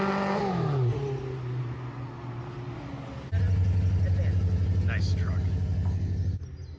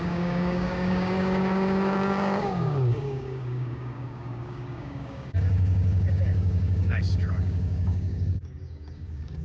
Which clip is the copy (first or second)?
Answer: second